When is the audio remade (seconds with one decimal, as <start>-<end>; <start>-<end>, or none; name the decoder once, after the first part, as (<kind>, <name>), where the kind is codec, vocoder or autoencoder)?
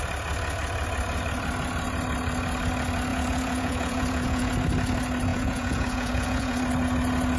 3.1-4.5 (vocoder, Vocos); 5.3-6.6